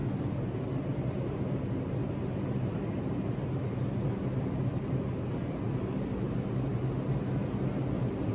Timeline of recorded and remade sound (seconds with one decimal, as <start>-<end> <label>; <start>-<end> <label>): 0.0-8.3 recorded

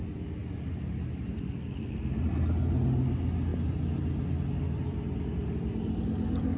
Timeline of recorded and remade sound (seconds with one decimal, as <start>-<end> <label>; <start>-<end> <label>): 0.0-6.6 recorded

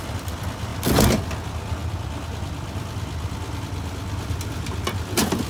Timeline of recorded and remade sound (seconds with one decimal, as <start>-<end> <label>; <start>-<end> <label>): 0.0-5.5 recorded

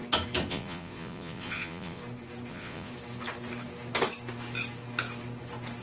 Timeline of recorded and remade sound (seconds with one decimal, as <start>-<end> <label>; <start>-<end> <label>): 0.0-0.5 recorded; 0.5-2.0 remade; 2.0-2.5 recorded; 2.5-2.9 remade; 2.9-5.8 recorded